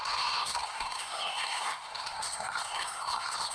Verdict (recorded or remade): remade